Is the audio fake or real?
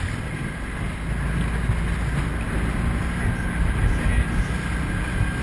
real